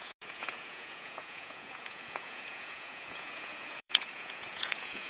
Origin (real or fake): fake